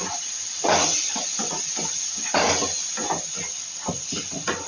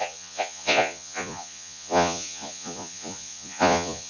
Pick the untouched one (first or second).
first